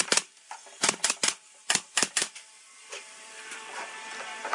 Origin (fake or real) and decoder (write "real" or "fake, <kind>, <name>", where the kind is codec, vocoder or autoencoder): fake, vocoder, BigVGAN v2